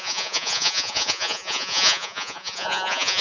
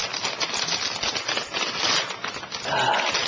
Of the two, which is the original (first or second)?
second